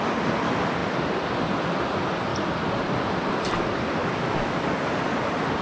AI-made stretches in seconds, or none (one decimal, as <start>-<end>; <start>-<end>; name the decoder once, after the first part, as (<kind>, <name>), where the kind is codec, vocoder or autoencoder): 4.0-4.6 (autoencoder, DAC-VAE)